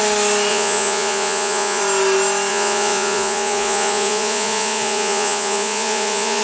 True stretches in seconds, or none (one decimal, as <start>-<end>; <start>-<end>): 0.0-0.5; 1.8-2.5